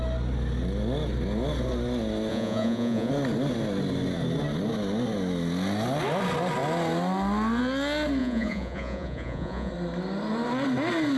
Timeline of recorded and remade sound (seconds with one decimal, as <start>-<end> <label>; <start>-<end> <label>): 0.0-2.3 recorded; 2.3-3.1 remade; 3.1-8.2 recorded; 8.2-9.7 remade; 9.7-11.2 recorded